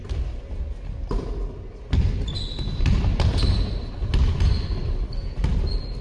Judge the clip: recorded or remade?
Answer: recorded